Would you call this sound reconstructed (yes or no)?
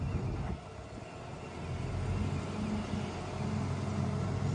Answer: no